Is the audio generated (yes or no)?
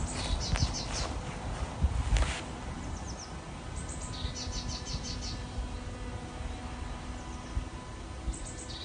no